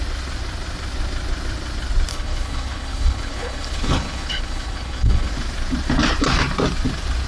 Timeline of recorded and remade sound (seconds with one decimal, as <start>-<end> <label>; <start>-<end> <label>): 0.0-2.1 recorded; 2.1-5.3 remade; 5.3-7.3 recorded